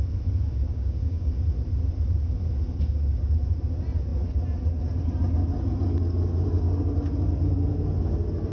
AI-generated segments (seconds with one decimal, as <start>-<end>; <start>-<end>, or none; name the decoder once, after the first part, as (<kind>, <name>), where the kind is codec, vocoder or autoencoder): 0.7-1.3 (codec, DAC)